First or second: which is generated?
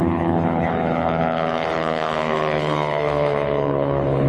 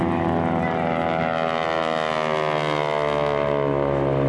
first